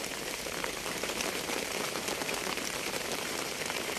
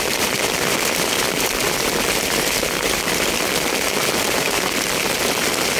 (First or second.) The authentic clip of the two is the second